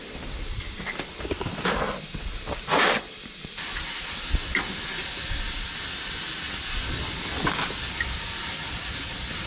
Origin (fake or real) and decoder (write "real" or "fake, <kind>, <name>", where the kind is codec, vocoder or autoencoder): real